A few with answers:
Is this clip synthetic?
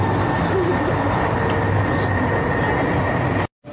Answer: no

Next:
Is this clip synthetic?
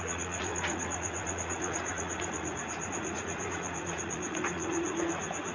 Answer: yes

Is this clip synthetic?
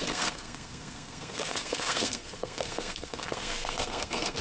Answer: yes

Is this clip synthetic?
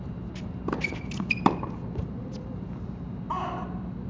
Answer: no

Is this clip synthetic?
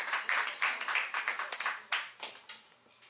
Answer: yes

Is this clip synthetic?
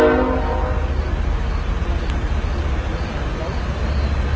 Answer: no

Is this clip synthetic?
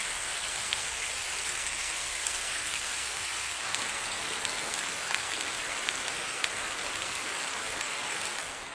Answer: yes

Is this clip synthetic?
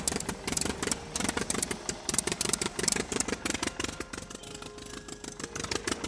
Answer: no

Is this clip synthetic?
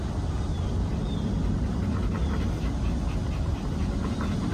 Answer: no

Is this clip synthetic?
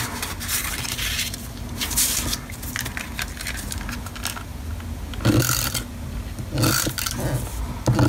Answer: no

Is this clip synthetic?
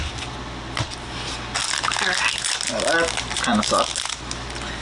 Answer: no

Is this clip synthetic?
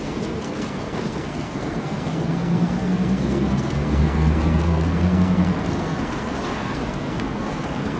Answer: yes